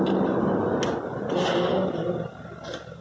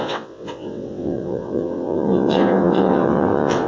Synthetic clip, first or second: second